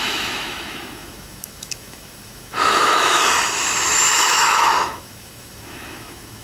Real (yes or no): no